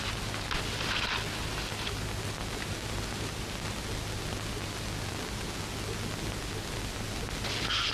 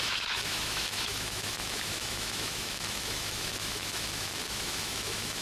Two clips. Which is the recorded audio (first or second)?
first